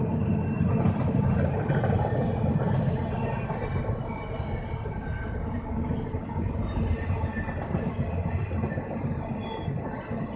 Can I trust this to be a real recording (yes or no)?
yes